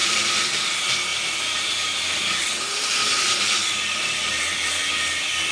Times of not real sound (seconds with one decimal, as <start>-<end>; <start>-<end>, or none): 0.0-0.7; 1.1-4.4